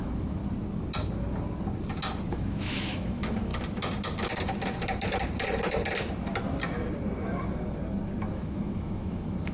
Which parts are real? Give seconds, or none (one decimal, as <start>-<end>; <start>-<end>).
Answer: 0.4-2.3; 3.5-8.3